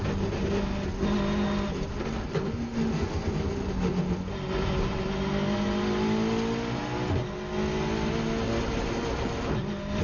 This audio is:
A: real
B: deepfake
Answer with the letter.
A